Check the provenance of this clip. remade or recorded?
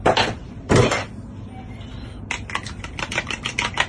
recorded